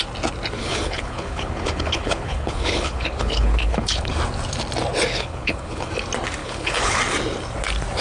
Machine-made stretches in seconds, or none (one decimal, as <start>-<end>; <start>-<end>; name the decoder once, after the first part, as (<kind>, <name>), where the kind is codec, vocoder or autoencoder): 0.6-4.1 (codec, HILCodec); 5.1-5.9; 6.4-7.0